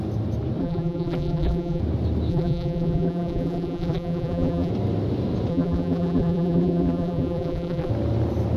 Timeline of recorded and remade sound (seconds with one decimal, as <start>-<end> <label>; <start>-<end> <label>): 0.0-0.6 recorded; 0.6-1.8 remade; 1.8-2.3 recorded; 2.3-4.7 remade; 4.7-5.5 recorded; 5.5-7.9 remade; 7.9-8.6 recorded